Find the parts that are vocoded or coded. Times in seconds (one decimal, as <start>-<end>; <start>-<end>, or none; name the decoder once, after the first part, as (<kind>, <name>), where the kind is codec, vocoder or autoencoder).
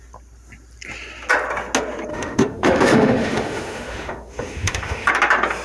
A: 2.1-5.1 (autoencoder, DAC-VAE)